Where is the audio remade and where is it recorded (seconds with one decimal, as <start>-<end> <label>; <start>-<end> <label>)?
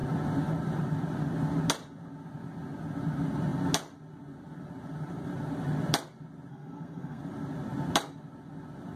0.0-6.5 recorded; 6.5-7.2 remade; 7.2-9.0 recorded